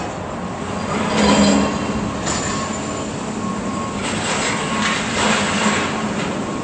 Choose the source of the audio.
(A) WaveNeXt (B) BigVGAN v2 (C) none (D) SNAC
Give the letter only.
C